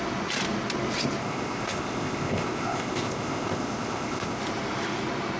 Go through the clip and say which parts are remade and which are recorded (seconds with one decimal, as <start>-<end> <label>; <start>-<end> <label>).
0.0-1.2 recorded; 1.2-4.4 remade; 4.4-5.4 recorded